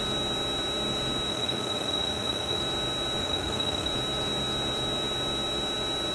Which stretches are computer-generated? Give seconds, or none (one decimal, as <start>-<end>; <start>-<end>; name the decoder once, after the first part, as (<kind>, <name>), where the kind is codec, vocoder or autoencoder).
1.3-2.6 (autoencoder, DAC-VAE); 3.2-3.9

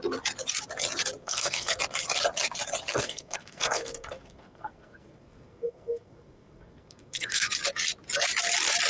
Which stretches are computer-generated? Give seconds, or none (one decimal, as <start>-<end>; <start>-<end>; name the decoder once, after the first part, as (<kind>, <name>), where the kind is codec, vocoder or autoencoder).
1.2-1.8 (codec, SNAC); 2.9-7.5

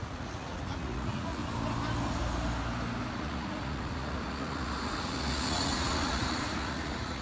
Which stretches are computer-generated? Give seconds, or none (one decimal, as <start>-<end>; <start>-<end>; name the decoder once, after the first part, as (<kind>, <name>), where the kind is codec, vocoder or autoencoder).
0.0-1.4 (vocoder, Vocos); 3.1-7.2

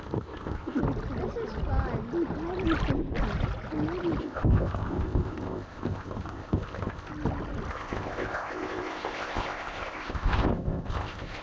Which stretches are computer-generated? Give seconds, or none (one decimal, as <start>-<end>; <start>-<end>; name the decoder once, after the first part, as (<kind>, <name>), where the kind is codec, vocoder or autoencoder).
0.0-0.8 (codec, ZipCodec); 4.2-7.1; 7.7-11.4

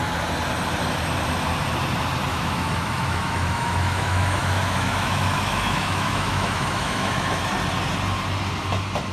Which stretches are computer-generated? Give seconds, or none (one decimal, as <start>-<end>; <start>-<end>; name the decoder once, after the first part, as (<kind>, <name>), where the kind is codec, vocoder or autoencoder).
2.3-7.4 (autoencoder, DAC-VAE)

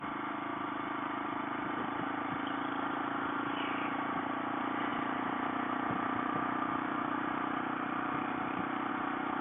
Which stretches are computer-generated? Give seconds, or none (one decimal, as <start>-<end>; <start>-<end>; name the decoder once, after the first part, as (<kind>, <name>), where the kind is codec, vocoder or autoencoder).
0.5-4.2 (vocoder, BigVGAN v2); 4.9-8.9

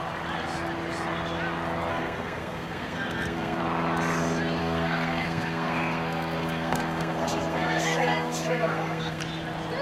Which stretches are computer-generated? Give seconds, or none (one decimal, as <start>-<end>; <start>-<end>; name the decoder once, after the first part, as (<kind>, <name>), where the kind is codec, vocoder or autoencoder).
1.9-3.6 (codec, SNAC); 4.6-9.2

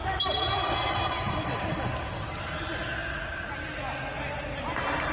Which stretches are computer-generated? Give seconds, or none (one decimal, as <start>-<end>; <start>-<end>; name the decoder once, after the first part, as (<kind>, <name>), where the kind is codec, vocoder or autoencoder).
none